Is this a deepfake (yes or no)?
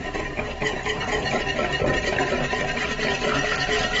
no